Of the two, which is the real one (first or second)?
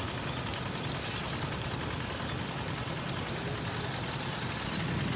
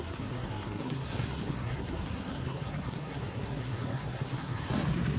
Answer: first